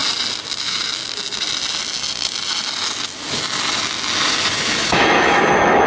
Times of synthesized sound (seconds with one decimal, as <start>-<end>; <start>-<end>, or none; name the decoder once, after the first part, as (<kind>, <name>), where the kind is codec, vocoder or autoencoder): 0.6-1.0 (autoencoder, DAC-VAE); 4.5-5.9